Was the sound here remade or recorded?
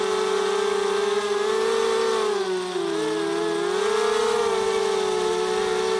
recorded